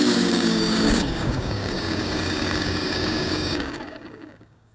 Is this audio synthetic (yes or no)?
yes